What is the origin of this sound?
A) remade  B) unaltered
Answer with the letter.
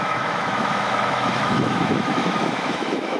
A